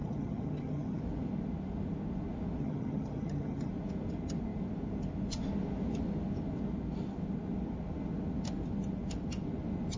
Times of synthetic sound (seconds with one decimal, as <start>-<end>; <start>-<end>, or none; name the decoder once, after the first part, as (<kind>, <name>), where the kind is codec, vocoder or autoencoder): 0.0-1.0 (vocoder, HiFi-GAN); 2.6-3.7